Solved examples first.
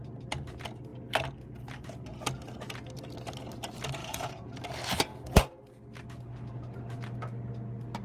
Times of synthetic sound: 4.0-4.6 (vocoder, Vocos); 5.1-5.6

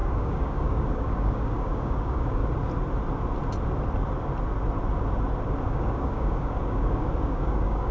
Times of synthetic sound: 0.0-2.4 (codec, DAC); 5.6-7.9

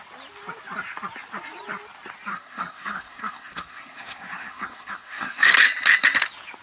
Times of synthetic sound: 2.3-5.5 (codec, SNAC)